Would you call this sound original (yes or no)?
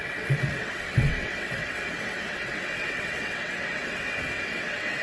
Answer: no